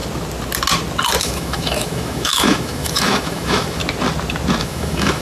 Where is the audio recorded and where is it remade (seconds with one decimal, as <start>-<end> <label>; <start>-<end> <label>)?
0.0-1.2 recorded; 1.2-3.8 remade; 3.8-4.6 recorded; 4.6-5.2 remade